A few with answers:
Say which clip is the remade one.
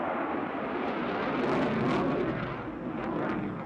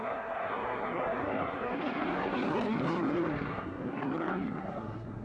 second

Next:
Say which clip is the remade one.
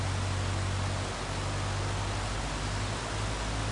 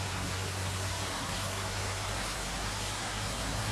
second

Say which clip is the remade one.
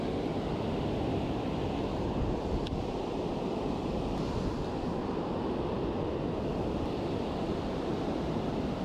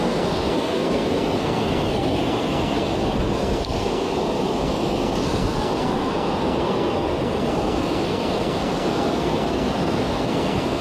second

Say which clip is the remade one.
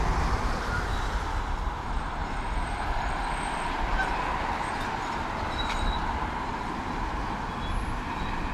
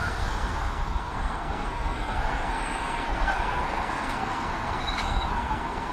second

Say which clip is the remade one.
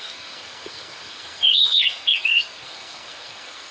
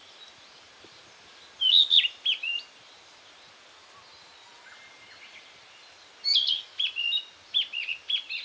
first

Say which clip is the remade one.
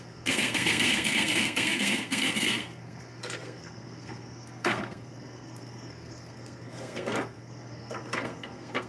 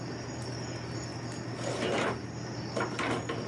first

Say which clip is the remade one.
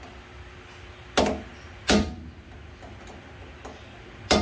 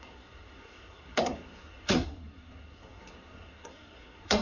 second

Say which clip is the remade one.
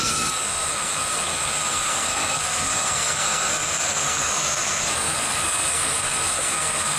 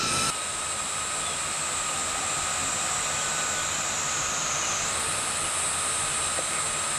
first